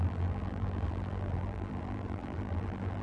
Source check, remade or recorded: remade